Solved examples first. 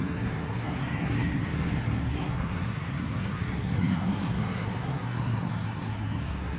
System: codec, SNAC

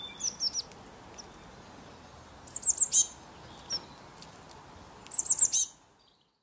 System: none